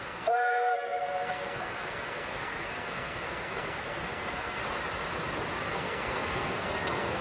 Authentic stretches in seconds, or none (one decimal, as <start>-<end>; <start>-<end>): 4.6-5.7